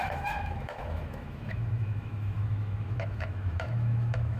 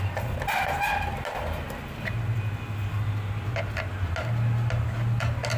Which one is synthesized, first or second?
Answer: first